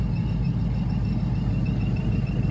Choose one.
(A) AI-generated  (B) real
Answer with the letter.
B